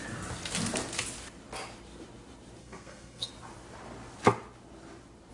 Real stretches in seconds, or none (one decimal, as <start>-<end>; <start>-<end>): 0.0-2.6; 3.3-5.3